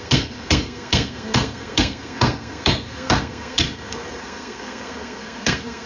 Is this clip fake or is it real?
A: fake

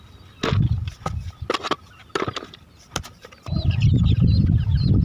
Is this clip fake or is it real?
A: real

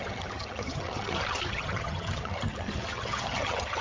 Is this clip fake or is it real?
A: fake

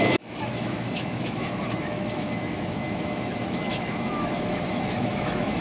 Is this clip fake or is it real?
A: fake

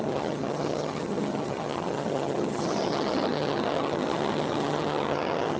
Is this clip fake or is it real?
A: fake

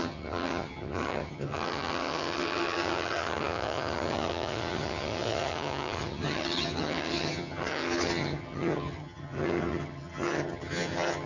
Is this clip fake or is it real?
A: fake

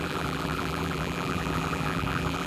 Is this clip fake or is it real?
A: fake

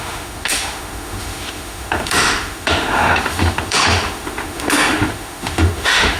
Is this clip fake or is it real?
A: fake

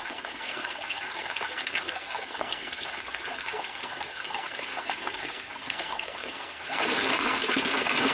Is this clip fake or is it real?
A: fake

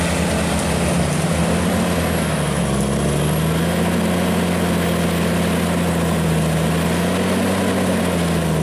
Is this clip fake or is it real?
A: real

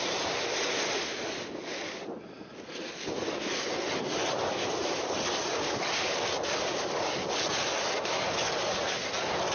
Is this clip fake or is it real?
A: real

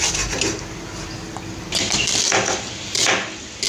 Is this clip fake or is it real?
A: real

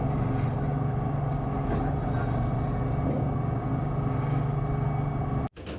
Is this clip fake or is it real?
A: real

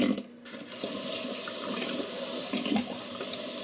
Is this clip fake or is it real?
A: real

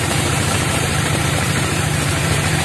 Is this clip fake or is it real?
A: fake